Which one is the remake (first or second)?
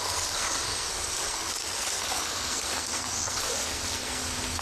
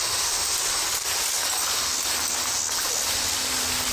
first